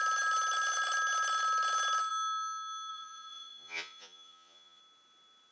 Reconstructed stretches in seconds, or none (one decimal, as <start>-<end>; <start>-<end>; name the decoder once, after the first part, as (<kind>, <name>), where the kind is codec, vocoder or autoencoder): 2.9-4.8 (vocoder, Vocos)